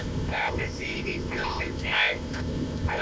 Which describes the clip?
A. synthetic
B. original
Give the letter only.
A